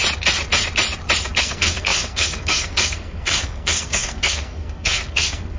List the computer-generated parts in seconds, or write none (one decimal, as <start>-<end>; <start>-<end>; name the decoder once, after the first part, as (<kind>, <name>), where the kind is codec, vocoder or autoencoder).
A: 1.4-5.6 (codec, SNAC)